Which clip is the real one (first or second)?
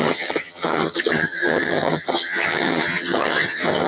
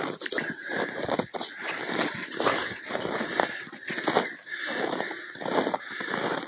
second